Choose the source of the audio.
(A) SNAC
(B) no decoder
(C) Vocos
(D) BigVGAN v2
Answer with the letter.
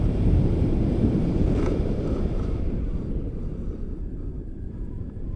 D